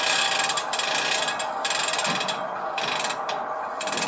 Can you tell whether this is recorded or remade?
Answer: recorded